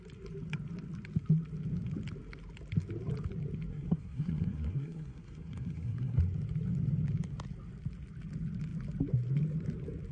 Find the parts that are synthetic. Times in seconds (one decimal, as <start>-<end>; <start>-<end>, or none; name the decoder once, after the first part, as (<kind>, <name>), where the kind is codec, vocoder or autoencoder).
3.7-6.2 (codec, SNAC)